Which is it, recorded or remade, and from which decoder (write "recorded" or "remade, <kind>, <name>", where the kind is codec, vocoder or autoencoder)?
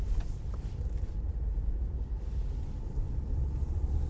recorded